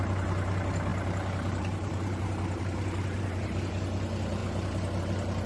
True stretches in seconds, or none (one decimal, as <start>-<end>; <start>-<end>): 4.4-5.0